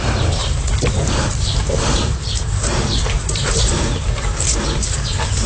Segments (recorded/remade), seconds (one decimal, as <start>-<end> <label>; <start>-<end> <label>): 0.0-0.4 recorded; 0.4-3.7 remade; 3.7-5.5 recorded